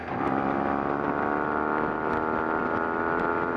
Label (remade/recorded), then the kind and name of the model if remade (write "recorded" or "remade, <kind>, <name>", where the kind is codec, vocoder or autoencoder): recorded